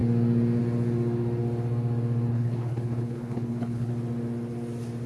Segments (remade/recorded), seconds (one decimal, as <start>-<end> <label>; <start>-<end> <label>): 0.0-2.3 recorded; 2.3-3.9 remade; 3.9-5.1 recorded